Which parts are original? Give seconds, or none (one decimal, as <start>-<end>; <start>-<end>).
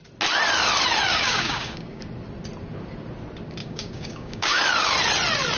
0.0-1.1; 2.0-3.6; 4.6-5.6